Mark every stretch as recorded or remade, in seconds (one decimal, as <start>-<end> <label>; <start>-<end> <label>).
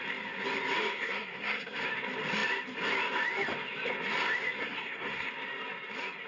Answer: 0.0-0.9 recorded; 0.9-1.8 remade; 1.8-4.6 recorded; 4.6-5.3 remade; 5.3-6.3 recorded